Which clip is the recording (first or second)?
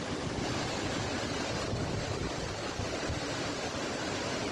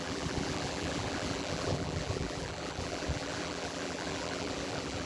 first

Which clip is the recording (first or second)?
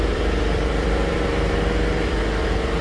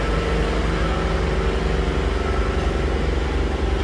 second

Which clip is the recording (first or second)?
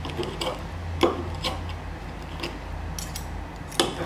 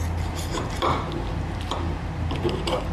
first